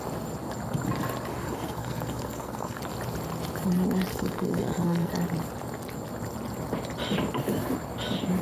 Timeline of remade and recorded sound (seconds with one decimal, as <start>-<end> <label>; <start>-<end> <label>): 0.0-1.3 recorded; 1.3-2.8 remade; 2.8-4.1 recorded; 4.1-5.1 remade; 5.1-8.4 recorded